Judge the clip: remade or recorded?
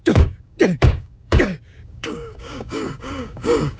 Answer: remade